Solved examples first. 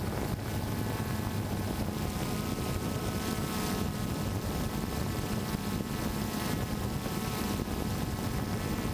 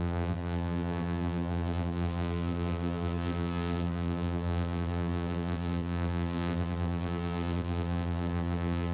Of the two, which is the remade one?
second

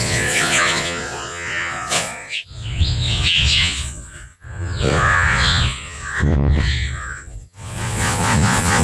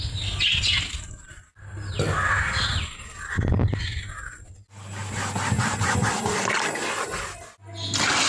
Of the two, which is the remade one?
first